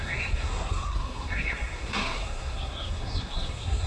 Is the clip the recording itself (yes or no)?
no